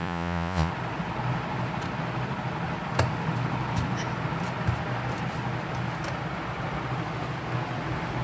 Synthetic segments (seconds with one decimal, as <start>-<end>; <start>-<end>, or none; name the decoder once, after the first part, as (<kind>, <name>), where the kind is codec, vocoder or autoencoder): 0.0-0.7 (vocoder, Vocos)